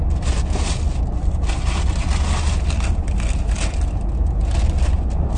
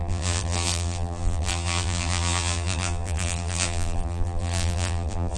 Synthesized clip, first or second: second